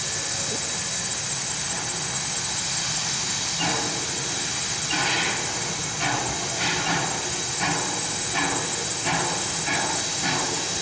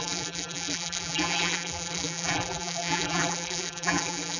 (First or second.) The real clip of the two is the first